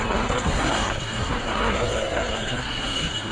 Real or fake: fake